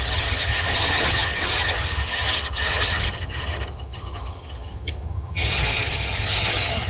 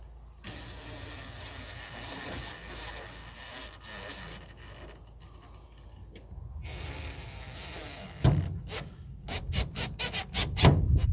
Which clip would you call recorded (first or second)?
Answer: second